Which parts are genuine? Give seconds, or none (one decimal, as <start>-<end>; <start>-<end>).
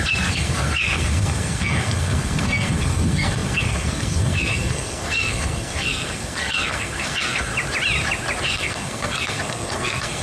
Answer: 7.5-8.4